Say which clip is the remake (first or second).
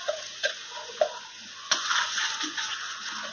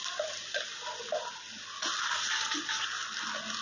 first